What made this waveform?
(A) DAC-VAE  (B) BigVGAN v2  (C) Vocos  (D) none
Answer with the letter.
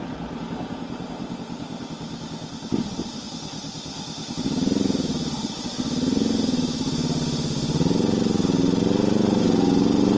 D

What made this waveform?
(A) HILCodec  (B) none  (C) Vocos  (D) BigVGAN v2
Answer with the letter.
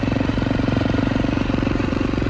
C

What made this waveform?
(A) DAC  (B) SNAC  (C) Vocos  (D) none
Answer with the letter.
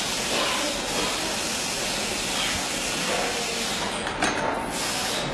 D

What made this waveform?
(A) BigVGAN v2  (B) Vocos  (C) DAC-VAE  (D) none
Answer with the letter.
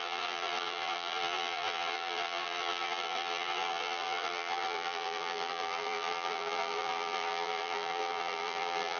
A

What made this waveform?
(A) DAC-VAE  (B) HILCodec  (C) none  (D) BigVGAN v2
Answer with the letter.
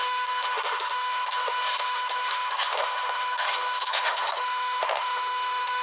A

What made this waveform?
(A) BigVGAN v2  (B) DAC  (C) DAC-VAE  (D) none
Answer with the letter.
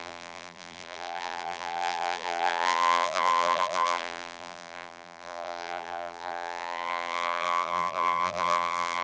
A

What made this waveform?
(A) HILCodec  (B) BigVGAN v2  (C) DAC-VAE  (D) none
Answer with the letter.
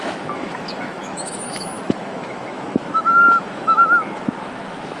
C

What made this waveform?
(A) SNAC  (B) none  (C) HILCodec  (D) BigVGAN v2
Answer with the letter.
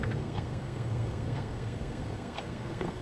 A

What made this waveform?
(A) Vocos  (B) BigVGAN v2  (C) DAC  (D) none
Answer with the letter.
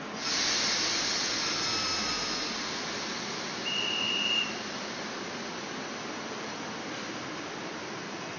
D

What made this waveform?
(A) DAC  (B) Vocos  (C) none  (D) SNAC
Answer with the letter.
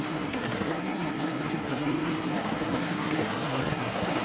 D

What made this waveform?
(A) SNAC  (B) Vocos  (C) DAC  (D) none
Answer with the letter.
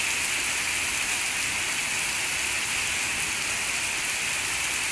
D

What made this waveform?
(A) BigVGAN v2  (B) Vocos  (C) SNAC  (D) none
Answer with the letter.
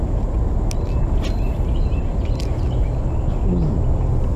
D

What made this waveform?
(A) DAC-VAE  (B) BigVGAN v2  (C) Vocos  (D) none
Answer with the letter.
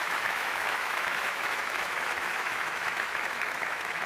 A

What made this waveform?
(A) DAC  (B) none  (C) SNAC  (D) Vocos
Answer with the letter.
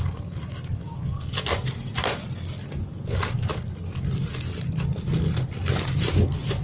B